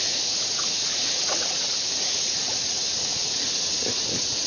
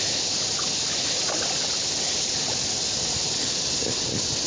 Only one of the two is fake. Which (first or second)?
first